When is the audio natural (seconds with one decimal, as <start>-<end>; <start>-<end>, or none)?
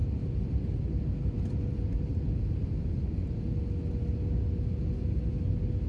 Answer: 3.5-5.9